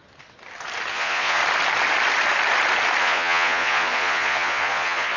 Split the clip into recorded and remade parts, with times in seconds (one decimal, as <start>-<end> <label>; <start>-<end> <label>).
0.0-0.9 recorded; 0.9-1.4 remade; 1.4-3.0 recorded; 3.0-5.2 remade